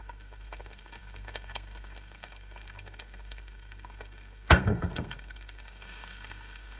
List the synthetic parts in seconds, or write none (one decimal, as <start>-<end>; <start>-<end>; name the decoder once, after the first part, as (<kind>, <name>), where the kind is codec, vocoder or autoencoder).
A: 0.0-6.8 (codec, SNAC)